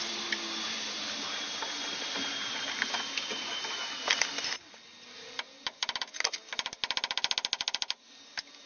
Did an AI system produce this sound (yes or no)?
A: no